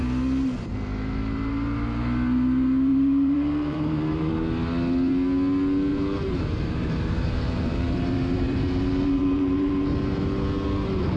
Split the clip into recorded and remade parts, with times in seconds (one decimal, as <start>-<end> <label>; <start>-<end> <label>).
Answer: 0.0-2.9 recorded; 2.9-4.3 remade; 4.3-5.9 recorded; 5.9-9.7 remade; 9.7-11.2 recorded